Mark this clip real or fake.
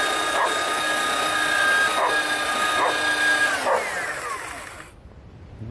real